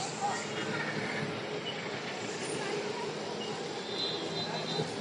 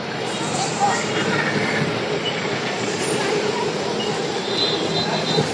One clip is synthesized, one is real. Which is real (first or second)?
first